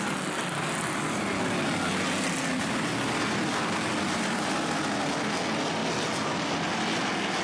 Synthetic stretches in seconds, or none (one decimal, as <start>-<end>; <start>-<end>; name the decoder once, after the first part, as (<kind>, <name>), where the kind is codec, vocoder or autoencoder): none